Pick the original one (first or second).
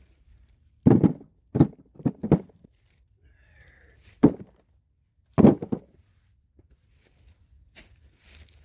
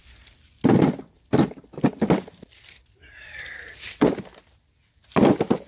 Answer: second